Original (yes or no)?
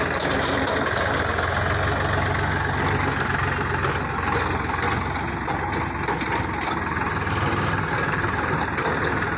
yes